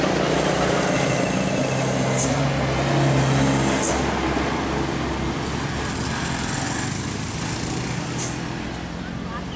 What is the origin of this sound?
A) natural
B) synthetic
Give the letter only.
A